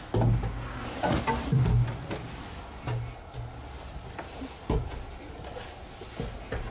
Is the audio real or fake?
real